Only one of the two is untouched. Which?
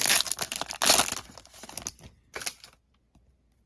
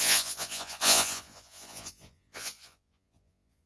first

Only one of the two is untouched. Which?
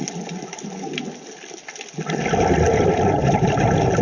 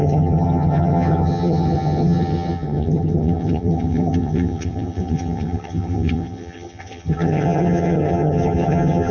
first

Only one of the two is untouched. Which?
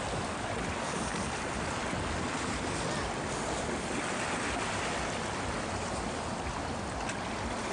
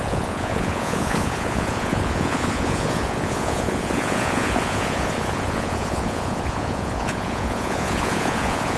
first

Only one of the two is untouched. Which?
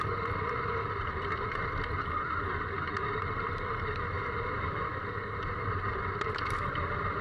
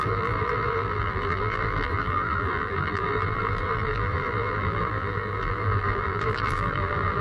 first